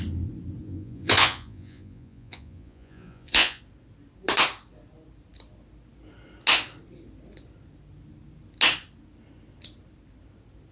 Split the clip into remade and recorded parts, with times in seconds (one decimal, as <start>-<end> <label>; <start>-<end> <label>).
0.0-0.6 recorded; 0.6-3.6 remade; 3.6-10.7 recorded